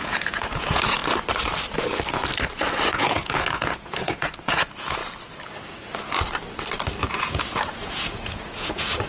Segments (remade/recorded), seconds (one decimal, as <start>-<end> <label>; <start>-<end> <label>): 0.0-1.0 remade; 1.0-2.9 recorded; 2.9-5.0 remade; 5.0-7.1 recorded; 7.1-9.1 remade